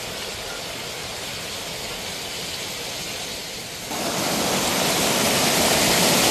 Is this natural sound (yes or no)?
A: yes